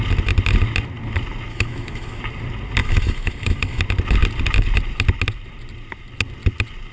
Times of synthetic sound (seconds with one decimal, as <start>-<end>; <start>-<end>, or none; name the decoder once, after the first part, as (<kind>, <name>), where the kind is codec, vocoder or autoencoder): 1.5-2.2 (autoencoder, DAC-VAE); 2.8-3.8